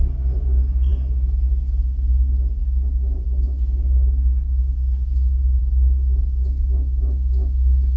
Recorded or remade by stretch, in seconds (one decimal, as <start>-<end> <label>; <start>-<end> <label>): 0.0-8.0 recorded

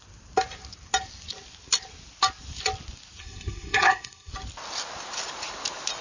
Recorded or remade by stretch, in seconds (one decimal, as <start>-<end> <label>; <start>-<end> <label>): 0.0-3.2 recorded; 3.2-4.3 remade; 4.3-6.0 recorded

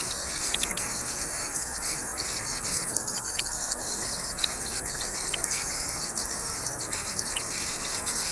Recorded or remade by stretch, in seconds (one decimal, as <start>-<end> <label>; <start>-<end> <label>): 0.0-8.3 remade

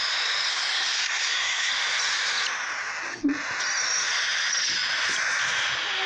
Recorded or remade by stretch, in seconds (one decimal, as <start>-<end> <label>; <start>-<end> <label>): 0.0-0.5 recorded; 0.5-1.7 remade; 1.7-6.1 recorded

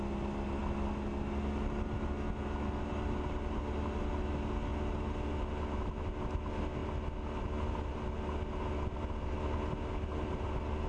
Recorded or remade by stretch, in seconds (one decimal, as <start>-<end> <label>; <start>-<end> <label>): 0.0-10.9 recorded

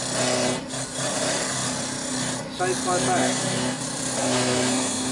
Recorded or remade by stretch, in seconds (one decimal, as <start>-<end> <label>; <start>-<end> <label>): 0.0-3.2 recorded; 3.2-3.8 remade; 3.8-4.2 recorded; 4.2-5.1 remade